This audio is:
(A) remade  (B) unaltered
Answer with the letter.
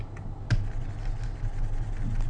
B